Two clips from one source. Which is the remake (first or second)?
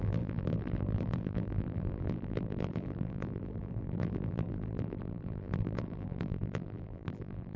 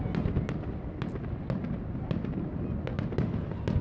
first